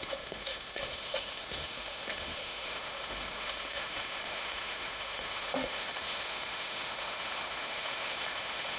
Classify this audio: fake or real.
fake